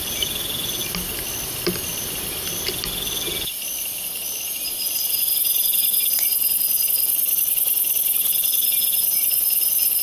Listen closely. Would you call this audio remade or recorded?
recorded